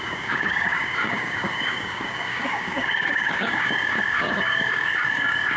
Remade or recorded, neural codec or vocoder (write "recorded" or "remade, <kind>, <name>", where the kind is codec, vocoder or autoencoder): remade, codec, DAC